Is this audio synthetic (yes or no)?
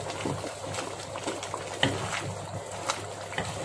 no